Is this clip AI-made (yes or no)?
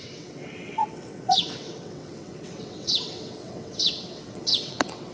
yes